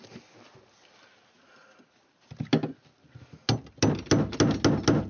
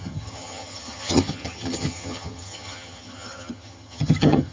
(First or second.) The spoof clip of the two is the second